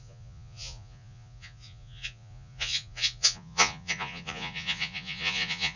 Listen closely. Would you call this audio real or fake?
fake